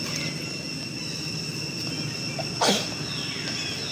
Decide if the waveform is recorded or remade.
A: recorded